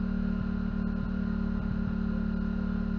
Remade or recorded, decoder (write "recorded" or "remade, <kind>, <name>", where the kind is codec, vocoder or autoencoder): recorded